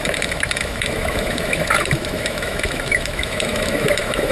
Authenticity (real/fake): fake